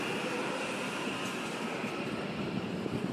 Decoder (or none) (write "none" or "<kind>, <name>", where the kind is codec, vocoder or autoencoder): vocoder, BigVGAN v2